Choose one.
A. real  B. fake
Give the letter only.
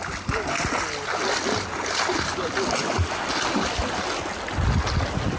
A